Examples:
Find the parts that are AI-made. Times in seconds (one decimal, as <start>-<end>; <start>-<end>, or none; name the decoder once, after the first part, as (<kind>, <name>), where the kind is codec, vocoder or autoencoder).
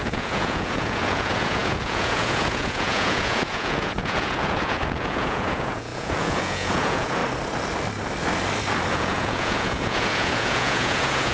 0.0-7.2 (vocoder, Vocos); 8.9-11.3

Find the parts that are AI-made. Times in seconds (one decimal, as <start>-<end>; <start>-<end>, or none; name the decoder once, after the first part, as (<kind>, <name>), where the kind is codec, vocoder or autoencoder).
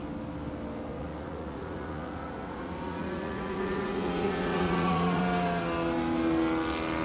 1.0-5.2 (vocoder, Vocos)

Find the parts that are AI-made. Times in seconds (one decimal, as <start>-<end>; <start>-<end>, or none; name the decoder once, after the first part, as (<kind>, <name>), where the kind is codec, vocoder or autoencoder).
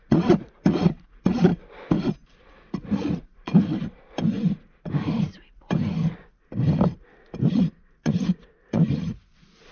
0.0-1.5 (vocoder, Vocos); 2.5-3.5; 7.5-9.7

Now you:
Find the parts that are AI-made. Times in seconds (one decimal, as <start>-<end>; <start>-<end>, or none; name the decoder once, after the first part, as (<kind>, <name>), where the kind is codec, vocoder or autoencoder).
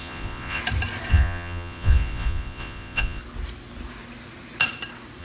0.0-0.6 (vocoder, Vocos); 1.1-3.2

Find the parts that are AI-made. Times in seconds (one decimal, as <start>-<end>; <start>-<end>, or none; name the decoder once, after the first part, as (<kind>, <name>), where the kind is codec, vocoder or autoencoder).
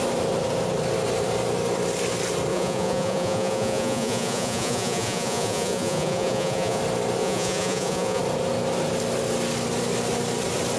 2.5-6.8 (vocoder, Vocos); 7.2-8.2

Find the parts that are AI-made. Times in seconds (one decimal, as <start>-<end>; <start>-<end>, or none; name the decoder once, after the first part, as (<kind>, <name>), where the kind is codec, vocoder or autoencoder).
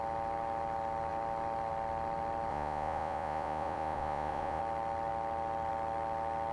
2.5-4.6 (vocoder, Vocos)